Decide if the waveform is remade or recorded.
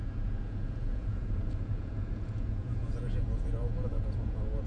remade